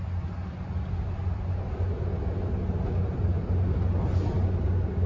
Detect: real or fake real